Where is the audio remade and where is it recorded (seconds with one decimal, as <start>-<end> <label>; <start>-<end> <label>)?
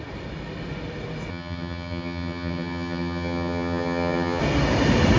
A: 0.0-1.3 recorded; 1.3-4.4 remade; 4.4-5.2 recorded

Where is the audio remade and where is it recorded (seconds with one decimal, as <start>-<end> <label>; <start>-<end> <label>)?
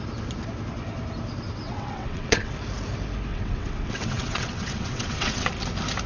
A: 0.0-1.6 recorded; 1.6-2.5 remade; 2.5-3.3 recorded; 3.3-5.5 remade; 5.5-6.1 recorded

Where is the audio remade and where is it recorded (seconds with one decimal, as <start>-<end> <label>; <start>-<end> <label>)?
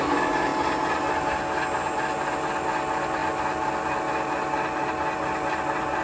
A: 0.0-6.0 recorded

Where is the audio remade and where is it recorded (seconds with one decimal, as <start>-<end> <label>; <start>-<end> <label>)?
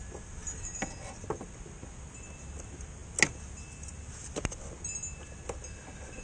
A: 0.0-6.2 recorded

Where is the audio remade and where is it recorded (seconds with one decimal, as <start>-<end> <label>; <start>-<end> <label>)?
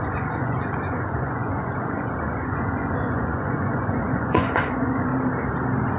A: 0.0-5.1 remade; 5.1-6.0 recorded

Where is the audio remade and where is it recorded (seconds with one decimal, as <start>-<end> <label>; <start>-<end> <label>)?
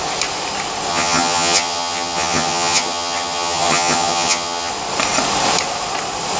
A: 0.0-0.9 recorded; 0.9-4.7 remade; 4.7-6.4 recorded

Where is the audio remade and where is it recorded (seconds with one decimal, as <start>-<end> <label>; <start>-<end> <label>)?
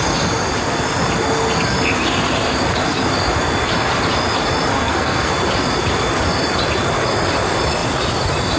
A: 0.0-4.7 recorded; 4.7-5.3 remade; 5.3-8.6 recorded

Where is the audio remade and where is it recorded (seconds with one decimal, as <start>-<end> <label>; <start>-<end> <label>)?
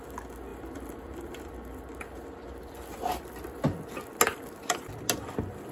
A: 0.0-0.5 recorded; 0.5-3.9 remade; 3.9-4.3 recorded; 4.3-4.8 remade; 4.8-5.7 recorded